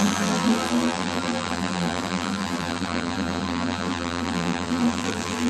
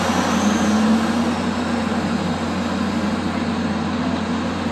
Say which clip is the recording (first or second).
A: second